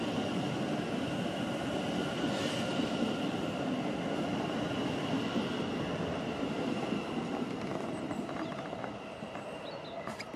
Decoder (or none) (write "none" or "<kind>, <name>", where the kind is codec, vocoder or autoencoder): none